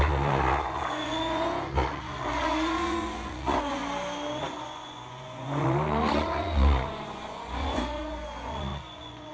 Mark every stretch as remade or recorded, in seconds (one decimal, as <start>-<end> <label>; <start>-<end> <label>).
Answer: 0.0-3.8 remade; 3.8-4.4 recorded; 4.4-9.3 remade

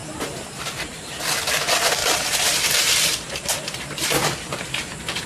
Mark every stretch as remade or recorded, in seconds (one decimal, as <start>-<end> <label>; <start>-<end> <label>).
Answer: 0.0-1.2 remade; 1.2-2.0 recorded; 2.0-5.3 remade

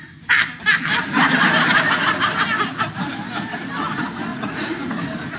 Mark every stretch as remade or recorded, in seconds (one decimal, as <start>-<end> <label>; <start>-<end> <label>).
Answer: 0.0-4.3 recorded; 4.3-4.9 remade; 4.9-5.4 recorded

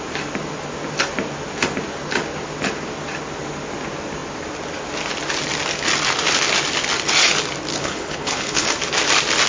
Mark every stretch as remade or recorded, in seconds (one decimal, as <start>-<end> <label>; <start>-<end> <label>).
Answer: 0.0-7.7 recorded; 7.7-8.7 remade; 8.7-9.5 recorded

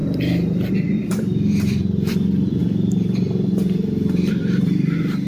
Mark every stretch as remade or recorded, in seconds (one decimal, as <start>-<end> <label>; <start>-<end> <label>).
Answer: 0.0-5.3 remade

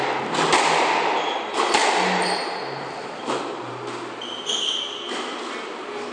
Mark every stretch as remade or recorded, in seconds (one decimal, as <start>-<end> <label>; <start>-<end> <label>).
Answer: 0.0-1.8 recorded; 1.8-3.4 remade; 3.4-6.1 recorded

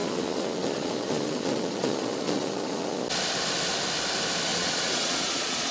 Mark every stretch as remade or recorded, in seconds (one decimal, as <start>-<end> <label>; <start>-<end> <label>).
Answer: 0.0-3.0 remade; 3.0-4.5 recorded; 4.5-5.7 remade

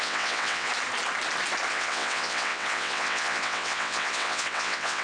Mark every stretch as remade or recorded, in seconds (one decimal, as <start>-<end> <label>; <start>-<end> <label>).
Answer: 0.0-0.7 remade; 0.7-1.7 recorded; 1.7-5.0 remade